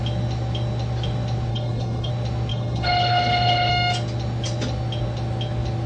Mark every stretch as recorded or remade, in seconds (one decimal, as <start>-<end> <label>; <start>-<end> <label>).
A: 0.0-1.5 recorded; 1.5-2.1 remade; 2.1-2.5 recorded; 2.5-3.7 remade; 3.7-5.9 recorded

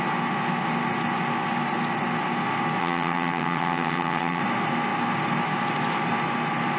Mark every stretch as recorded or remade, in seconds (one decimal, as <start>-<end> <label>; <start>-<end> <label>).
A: 0.0-2.8 recorded; 2.8-4.4 remade; 4.4-6.8 recorded

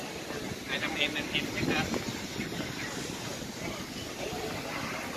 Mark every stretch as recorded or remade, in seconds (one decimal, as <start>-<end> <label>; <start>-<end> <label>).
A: 0.0-2.1 recorded; 2.1-3.5 remade; 3.5-5.2 recorded

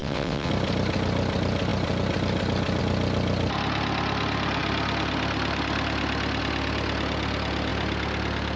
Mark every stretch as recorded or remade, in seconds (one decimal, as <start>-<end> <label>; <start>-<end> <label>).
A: 0.0-0.5 remade; 0.5-8.6 recorded